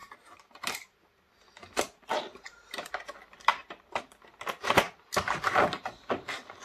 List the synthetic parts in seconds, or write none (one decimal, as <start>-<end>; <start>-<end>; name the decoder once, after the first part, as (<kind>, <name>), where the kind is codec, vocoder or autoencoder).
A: 0.0-1.2 (vocoder, BigVGAN v2); 2.3-2.9; 3.5-4.0